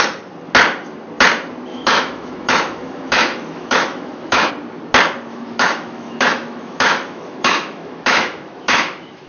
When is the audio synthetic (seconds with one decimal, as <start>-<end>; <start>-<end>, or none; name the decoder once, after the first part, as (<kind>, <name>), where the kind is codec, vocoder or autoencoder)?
1.7-4.5 (autoencoder, DAC-VAE); 5.3-9.3